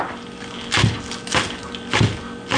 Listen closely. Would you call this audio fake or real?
real